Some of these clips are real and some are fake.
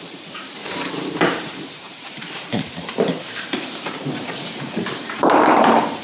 fake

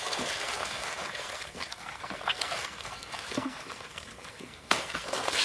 fake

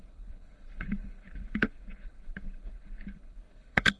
fake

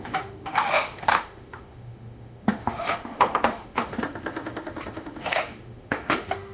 fake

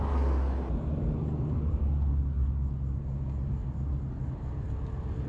real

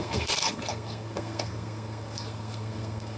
fake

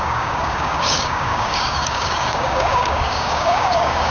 fake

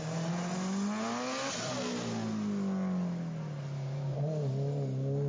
real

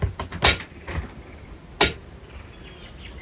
real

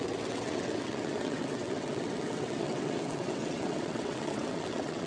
fake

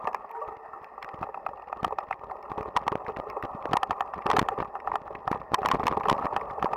real